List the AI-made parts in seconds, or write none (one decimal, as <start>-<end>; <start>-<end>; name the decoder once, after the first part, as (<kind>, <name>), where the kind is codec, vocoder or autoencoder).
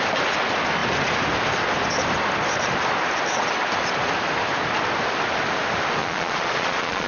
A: 6.0-7.1 (vocoder, Vocos)